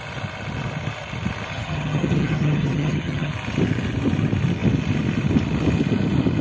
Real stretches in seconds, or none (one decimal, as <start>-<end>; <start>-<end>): 0.0-1.5; 3.3-6.4